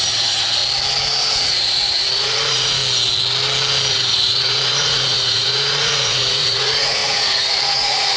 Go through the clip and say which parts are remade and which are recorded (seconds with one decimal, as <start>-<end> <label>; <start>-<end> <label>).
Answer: 0.0-0.6 remade; 0.6-1.3 recorded; 1.3-2.8 remade; 2.8-3.9 recorded; 3.9-8.2 remade